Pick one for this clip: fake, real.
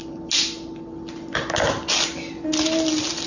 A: real